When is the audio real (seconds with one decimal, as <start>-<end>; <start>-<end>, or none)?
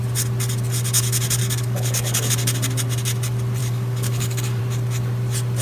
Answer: 0.0-1.4; 2.3-3.6; 4.6-5.6